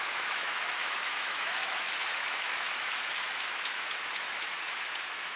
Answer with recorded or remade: remade